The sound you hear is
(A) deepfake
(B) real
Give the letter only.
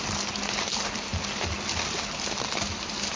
B